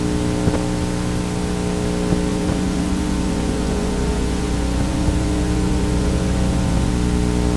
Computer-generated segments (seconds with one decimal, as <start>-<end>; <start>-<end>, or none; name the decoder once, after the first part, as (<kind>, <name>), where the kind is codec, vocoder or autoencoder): 2.3-6.9 (vocoder, Vocos)